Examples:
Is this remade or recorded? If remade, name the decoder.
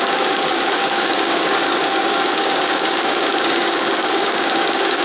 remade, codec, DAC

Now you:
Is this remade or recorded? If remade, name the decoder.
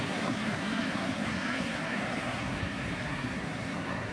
remade, codec, SNAC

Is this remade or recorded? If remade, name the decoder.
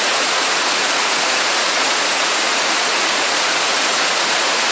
remade, vocoder, Vocos